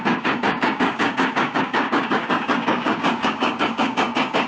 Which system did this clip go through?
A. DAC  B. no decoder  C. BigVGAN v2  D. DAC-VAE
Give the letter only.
A